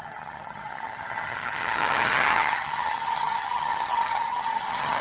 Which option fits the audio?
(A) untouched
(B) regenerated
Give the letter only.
B